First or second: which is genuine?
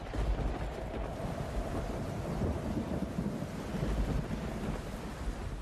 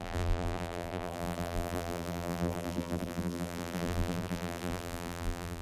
first